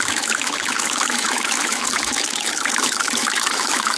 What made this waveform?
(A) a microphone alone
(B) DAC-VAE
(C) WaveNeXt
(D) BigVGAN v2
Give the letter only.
B